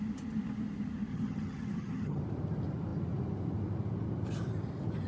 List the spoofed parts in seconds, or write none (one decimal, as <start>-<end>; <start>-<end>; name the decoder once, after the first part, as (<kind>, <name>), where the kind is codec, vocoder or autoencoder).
1.1-2.2 (vocoder, HiFi-GAN)